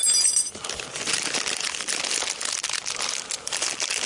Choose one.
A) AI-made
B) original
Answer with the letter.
B